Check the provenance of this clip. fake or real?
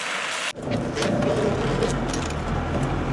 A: real